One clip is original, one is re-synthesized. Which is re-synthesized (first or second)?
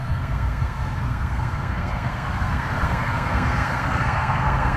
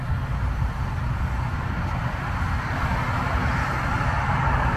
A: first